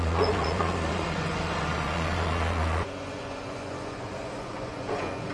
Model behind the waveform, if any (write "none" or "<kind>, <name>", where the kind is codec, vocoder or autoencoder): vocoder, Vocos